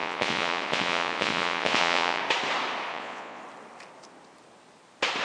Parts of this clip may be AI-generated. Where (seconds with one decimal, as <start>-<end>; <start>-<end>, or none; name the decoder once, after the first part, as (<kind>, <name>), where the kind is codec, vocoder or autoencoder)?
0.0-2.2 (vocoder, Vocos); 2.9-3.4